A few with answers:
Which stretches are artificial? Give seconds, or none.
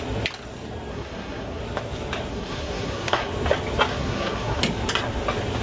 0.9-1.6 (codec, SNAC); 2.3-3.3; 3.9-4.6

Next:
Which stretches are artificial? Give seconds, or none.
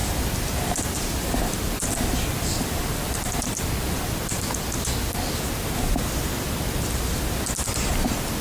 0.0-4.0 (vocoder, BigVGAN v2)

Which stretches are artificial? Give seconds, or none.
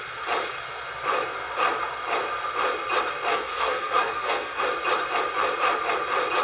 3.3-4.6 (codec, SNAC)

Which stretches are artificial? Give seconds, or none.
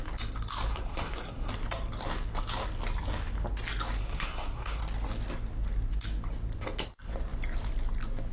0.7-1.5 (codec, SNAC); 4.0-4.8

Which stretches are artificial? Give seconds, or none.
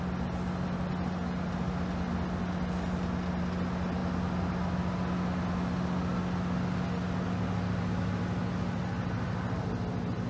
none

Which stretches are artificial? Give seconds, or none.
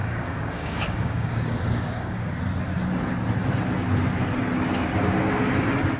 0.0-2.3 (codec, DAC)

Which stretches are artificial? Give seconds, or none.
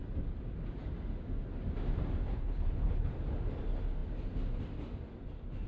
2.3-3.1 (codec, HILCodec)